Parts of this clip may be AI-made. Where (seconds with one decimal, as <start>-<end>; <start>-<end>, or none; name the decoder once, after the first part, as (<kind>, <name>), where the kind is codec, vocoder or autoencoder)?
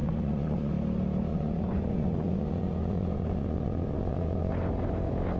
0.0-0.7 (vocoder, Vocos); 1.3-4.5